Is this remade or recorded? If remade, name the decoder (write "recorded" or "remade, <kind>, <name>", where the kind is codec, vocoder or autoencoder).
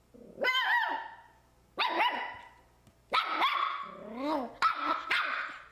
recorded